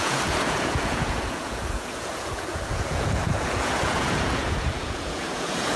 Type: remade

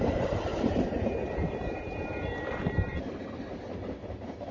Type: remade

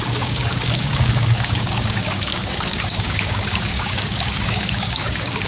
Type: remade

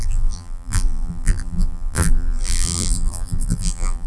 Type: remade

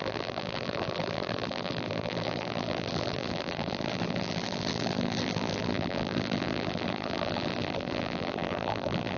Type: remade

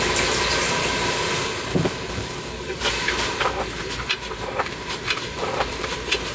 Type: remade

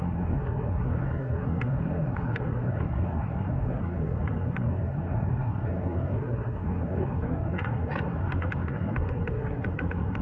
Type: remade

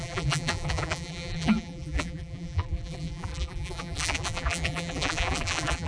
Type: remade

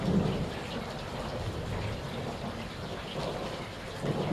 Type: recorded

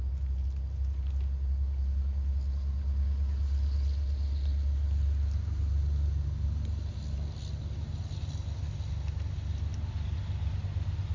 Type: recorded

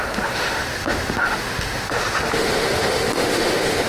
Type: remade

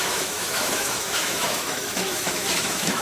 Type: remade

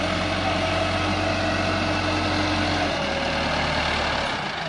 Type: recorded